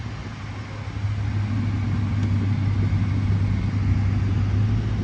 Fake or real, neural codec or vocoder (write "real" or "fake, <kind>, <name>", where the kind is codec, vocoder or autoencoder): real